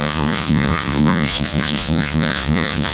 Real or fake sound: fake